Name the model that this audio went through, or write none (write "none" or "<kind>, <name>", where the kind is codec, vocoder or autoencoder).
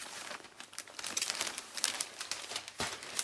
vocoder, BigVGAN v2